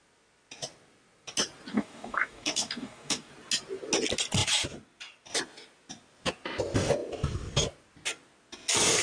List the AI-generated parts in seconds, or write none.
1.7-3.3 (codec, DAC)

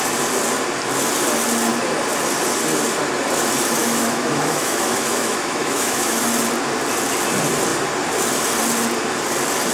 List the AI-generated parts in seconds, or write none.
3.8-6.2 (autoencoder, DAC-VAE)